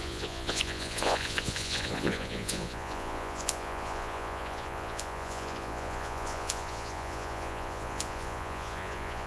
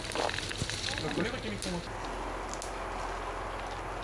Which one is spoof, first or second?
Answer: first